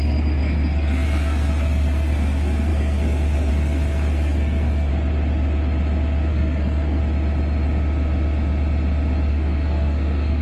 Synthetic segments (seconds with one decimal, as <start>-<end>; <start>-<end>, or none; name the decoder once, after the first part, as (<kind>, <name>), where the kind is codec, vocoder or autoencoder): 0.0-4.9 (codec, SNAC); 6.3-7.0; 9.3-10.4